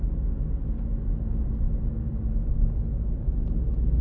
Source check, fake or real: real